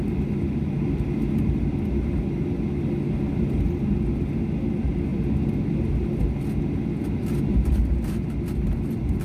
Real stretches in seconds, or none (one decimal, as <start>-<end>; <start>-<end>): 0.0-9.2